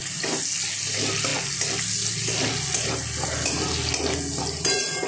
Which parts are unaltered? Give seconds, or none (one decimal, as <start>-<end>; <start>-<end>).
0.0-5.1